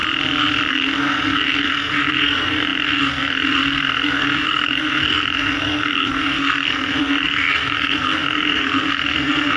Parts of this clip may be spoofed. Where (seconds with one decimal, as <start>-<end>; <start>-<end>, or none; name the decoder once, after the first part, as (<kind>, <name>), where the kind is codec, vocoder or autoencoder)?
0.7-9.6 (codec, SNAC)